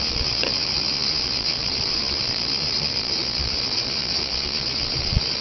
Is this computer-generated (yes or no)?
yes